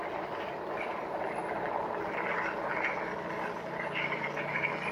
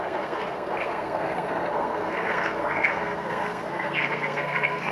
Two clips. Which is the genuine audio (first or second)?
first